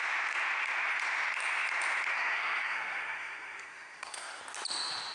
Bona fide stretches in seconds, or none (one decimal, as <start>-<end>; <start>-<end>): 0.0-2.1; 4.4-5.1